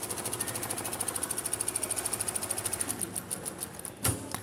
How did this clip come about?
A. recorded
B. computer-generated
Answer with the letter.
A